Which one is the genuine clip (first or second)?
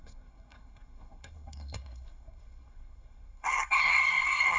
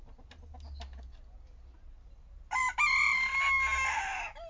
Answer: second